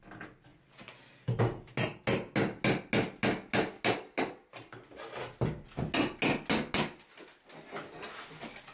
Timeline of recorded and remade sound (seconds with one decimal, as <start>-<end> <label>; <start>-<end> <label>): 0.0-8.7 recorded